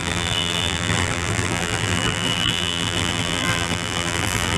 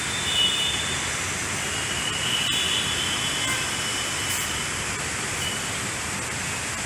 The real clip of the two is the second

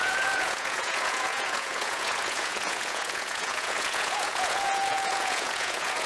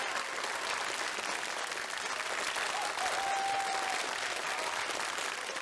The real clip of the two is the second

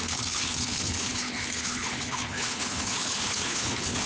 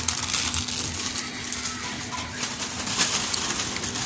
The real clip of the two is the second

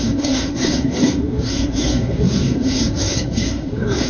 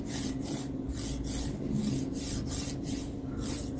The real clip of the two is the second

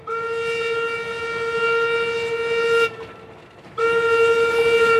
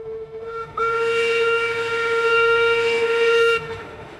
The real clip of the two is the first